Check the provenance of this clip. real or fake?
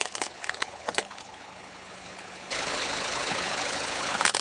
fake